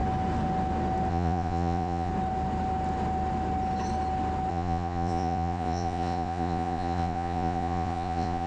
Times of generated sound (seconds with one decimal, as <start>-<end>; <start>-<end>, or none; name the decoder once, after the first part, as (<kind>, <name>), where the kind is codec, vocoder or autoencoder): 1.1-2.1 (vocoder, Vocos); 4.5-8.5